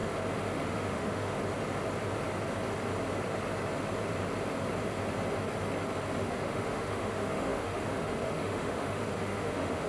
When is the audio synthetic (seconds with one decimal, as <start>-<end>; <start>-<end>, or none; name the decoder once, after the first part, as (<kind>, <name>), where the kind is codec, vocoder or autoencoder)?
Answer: 0.7-1.3 (autoencoder, DAC-VAE); 6.2-9.9